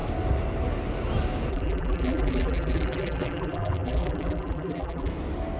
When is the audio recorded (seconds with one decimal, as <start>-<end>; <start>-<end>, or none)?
0.0-1.5; 5.1-5.6